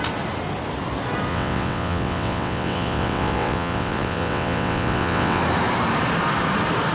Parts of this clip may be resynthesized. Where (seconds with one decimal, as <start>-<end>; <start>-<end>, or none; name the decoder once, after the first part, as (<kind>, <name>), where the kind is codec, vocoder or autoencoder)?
1.3-5.4 (vocoder, WaveNeXt)